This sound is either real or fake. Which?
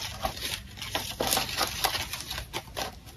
real